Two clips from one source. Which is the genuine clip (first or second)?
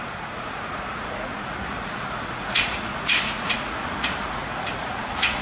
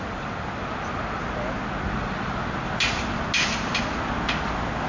second